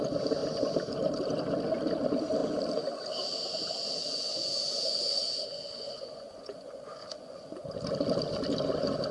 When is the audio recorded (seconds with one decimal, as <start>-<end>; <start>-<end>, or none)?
0.0-4.0; 7.7-9.1